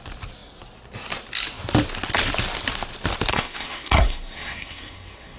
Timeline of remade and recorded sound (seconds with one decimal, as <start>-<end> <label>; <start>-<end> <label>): 0.0-3.3 recorded; 3.3-5.4 remade